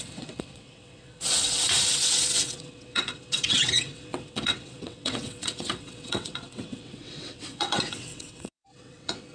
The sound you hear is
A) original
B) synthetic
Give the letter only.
B